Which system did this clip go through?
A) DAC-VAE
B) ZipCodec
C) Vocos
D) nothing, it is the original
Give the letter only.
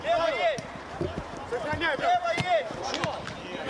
D